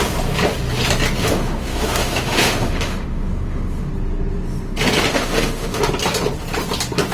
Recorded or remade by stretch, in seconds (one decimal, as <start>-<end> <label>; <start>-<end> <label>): 0.0-1.2 recorded; 1.2-3.9 remade; 3.9-5.1 recorded; 5.1-5.8 remade; 5.8-7.1 recorded